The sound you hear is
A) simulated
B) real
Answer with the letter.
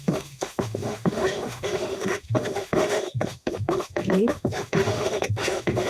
A